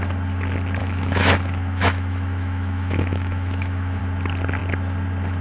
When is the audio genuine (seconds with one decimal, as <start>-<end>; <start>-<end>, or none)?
0.0-0.8; 4.0-5.4